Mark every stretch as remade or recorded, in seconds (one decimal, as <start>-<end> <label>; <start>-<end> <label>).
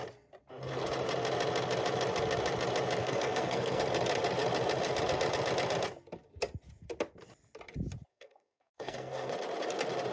0.0-3.0 recorded; 3.0-3.8 remade; 3.8-8.1 recorded; 8.1-9.3 remade; 9.3-10.1 recorded